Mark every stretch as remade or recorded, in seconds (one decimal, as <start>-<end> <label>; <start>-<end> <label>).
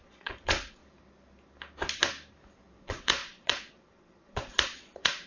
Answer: 0.0-0.8 remade; 0.8-2.8 recorded; 2.8-5.3 remade